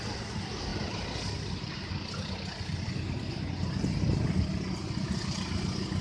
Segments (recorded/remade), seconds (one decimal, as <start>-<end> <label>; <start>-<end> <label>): 0.0-6.0 recorded